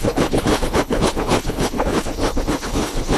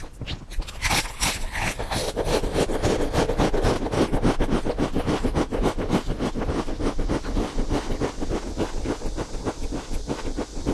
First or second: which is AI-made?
first